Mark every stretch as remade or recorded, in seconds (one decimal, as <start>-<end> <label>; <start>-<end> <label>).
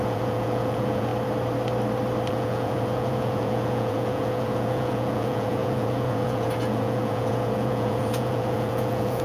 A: 0.0-1.1 remade; 1.1-2.3 recorded; 2.3-9.2 remade